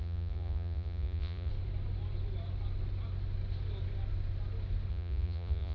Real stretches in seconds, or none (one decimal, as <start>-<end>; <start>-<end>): 1.5-4.9